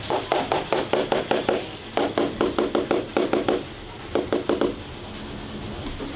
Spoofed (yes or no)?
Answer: no